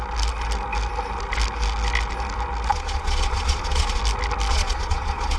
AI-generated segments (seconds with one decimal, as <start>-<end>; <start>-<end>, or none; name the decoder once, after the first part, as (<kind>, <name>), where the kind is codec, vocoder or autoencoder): 2.7-4.0 (vocoder, Vocos); 4.5-5.4

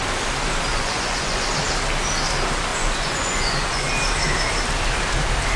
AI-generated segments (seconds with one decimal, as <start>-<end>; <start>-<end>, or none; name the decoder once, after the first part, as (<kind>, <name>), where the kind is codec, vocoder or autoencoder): 0.7-1.5 (vocoder, Vocos); 2.7-3.9

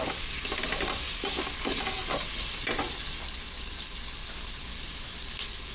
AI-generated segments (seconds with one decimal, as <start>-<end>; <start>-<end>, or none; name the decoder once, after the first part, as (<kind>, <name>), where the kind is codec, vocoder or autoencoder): none

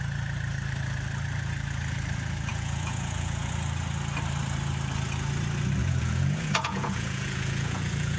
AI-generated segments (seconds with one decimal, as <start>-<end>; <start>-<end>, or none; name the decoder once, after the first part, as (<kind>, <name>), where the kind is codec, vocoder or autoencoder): 2.5-3.5 (vocoder, Vocos); 5.8-8.2

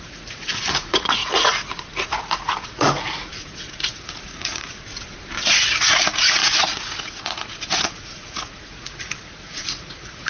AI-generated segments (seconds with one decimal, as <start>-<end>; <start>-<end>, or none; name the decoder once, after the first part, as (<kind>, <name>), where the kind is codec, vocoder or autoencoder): 0.0-4.9 (vocoder, Vocos); 5.5-10.3